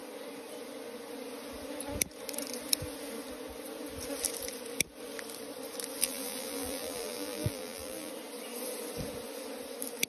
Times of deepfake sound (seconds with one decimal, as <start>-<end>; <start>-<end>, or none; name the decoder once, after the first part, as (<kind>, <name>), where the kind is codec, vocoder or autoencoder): 6.0-8.1 (vocoder, BigVGAN v2)